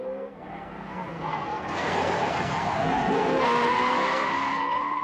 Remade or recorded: remade